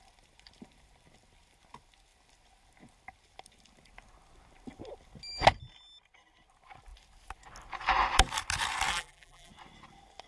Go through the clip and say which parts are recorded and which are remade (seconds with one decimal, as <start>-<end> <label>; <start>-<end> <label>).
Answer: 0.0-8.9 recorded; 8.9-9.5 remade; 9.5-10.3 recorded